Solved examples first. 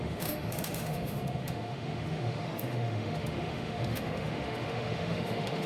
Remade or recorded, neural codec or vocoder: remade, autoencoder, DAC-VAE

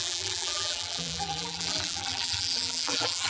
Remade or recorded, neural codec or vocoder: remade, vocoder, BigVGAN v2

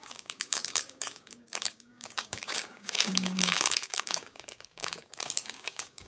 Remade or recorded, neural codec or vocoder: remade, codec, DAC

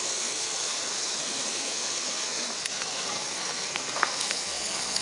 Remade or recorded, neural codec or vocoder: remade, codec, SNAC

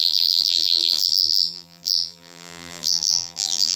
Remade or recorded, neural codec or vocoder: remade, vocoder, BigVGAN v2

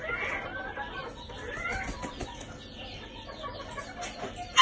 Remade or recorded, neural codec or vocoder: recorded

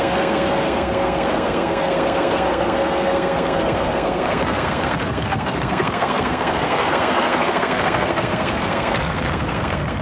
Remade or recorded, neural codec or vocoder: remade, codec, SNAC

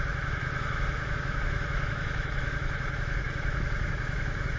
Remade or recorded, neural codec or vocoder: remade, autoencoder, DAC-VAE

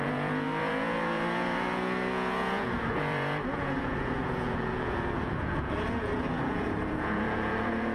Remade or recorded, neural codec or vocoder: remade, vocoder, Vocos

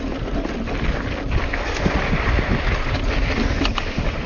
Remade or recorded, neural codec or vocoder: recorded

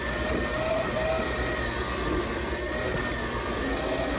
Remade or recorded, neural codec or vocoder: recorded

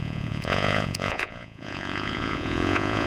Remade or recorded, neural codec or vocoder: remade, vocoder, Vocos